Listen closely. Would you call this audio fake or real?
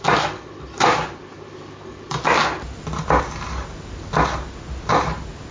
real